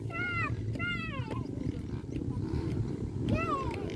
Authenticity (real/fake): real